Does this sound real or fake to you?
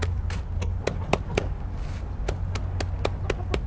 real